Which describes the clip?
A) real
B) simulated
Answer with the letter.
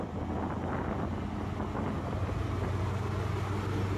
A